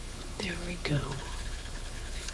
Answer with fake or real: fake